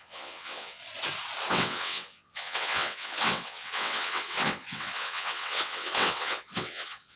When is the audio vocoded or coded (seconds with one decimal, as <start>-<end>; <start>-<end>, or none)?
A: 0.0-0.8; 1.5-7.2